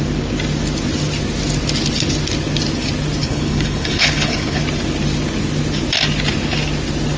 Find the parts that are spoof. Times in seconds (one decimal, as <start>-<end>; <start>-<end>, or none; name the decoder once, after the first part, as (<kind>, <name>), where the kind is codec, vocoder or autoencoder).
3.2-4.6 (codec, HILCodec)